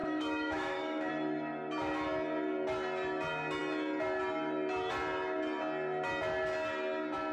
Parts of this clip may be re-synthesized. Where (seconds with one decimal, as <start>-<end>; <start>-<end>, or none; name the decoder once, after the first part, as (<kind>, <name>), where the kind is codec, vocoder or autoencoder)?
0.0-1.1 (autoencoder, DAC-VAE)